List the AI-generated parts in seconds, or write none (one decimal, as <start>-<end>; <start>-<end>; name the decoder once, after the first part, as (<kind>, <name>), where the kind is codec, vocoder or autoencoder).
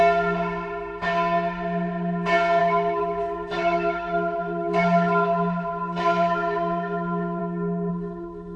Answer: 2.6-7.4 (autoencoder, DAC-VAE); 7.9-8.6